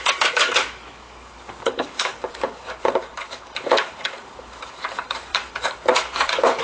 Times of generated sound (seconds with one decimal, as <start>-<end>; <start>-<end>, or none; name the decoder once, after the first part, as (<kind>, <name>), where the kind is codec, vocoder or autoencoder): 0.0-6.6 (codec, DAC)